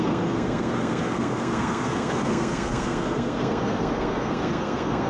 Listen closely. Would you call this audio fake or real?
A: fake